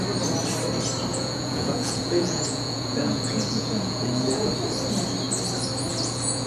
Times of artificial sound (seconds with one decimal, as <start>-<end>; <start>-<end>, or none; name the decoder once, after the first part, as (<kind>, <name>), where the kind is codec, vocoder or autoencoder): 1.1-4.5 (vocoder, Vocos); 5.9-6.5